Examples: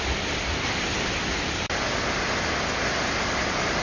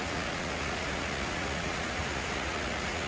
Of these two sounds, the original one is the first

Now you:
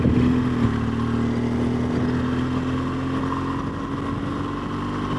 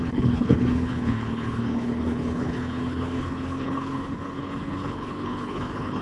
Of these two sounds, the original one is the first